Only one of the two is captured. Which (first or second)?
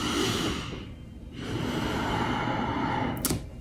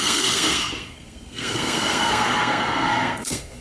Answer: first